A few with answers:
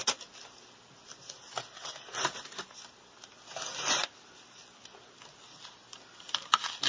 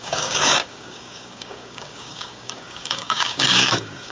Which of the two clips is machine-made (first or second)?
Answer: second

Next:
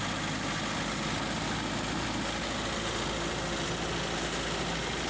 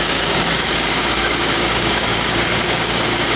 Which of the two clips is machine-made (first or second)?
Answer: second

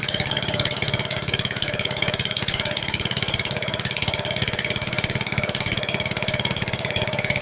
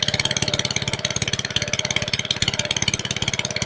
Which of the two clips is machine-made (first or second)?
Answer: first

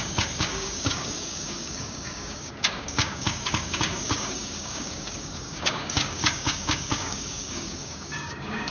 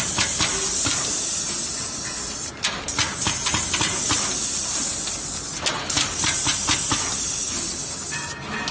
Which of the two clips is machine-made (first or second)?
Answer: first